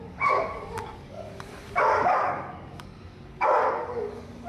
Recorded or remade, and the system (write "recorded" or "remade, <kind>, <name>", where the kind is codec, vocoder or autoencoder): remade, codec, DAC